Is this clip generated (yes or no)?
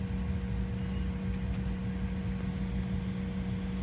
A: no